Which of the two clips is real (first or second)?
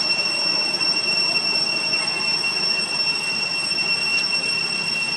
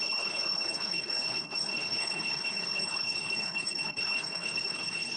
first